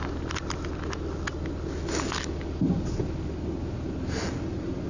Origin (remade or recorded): recorded